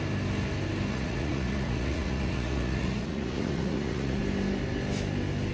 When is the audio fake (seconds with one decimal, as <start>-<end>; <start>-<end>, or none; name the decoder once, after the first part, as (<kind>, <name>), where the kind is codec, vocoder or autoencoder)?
0.9-4.2 (vocoder, Vocos)